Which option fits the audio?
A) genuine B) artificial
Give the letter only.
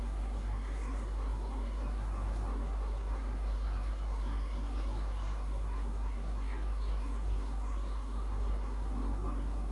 B